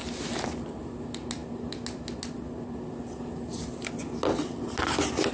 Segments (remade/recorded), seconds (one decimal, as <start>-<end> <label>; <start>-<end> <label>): 0.0-5.3 recorded